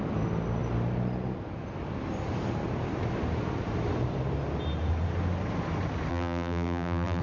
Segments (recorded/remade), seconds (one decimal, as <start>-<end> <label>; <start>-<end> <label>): 0.0-6.1 recorded; 6.1-7.2 remade